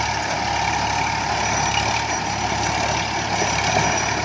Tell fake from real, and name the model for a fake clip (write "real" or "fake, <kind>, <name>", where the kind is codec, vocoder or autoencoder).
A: real